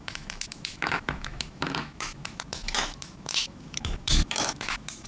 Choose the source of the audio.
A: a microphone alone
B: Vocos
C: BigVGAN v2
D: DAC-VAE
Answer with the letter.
D